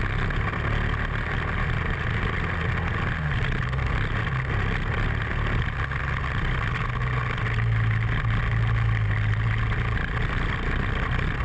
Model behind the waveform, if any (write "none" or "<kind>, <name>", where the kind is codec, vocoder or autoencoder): none